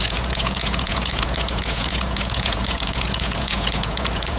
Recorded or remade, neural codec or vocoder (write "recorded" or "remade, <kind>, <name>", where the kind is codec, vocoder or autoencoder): remade, vocoder, Vocos